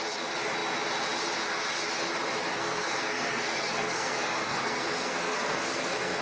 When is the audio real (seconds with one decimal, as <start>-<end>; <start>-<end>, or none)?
0.0-2.5